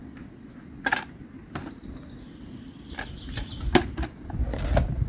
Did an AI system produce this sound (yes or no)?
no